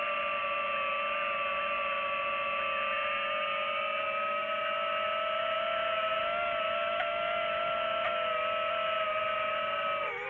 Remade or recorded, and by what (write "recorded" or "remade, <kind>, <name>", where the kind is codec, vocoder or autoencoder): recorded